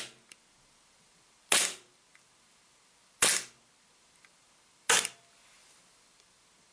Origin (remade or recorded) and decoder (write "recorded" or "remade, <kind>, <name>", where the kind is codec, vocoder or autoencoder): recorded